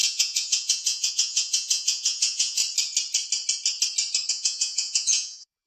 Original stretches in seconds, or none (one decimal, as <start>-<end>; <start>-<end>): 2.6-4.3